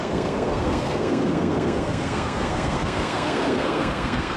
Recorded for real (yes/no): no